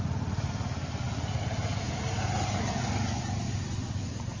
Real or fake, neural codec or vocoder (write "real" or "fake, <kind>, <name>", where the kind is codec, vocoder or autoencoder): real